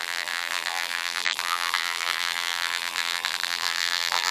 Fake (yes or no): yes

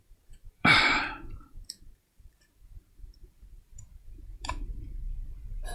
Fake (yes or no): yes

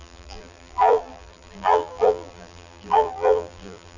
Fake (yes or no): yes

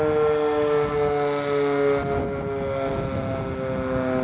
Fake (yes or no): no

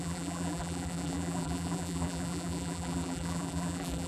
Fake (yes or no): yes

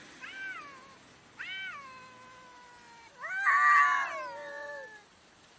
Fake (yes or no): no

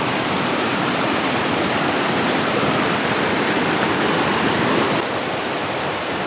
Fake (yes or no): yes